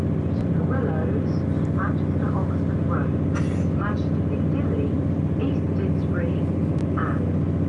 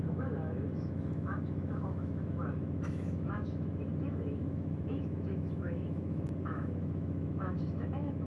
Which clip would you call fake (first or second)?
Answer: second